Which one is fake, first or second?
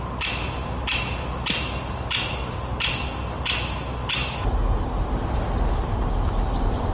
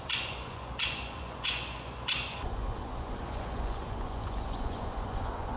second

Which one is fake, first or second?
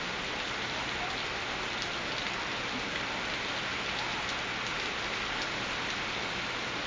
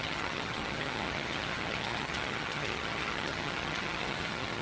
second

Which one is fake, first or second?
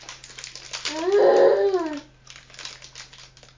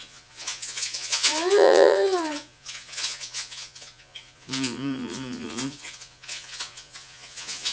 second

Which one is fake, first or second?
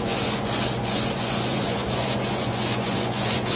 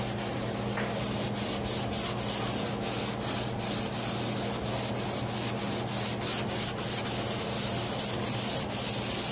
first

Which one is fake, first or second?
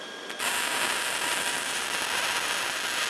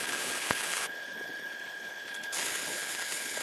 second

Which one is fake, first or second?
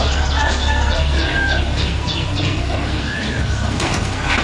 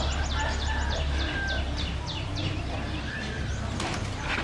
first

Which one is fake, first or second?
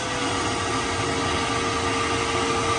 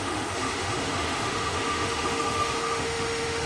second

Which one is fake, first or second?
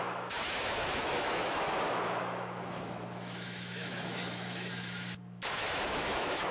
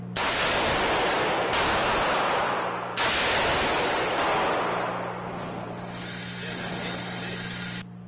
first